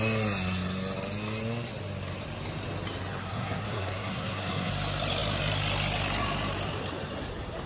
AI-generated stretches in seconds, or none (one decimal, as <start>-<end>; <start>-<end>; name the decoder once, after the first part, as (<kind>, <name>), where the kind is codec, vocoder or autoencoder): 3.2-4.7 (codec, SNAC)